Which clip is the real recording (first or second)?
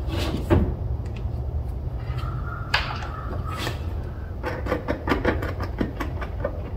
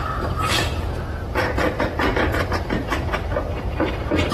first